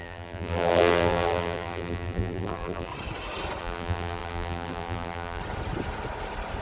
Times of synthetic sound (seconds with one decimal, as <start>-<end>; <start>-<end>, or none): 0.0-2.9; 3.6-5.4